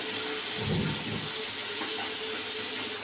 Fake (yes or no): no